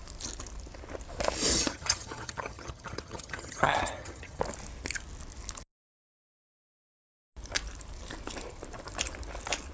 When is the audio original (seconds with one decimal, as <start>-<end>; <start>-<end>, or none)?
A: 0.0-1.5; 4.4-9.7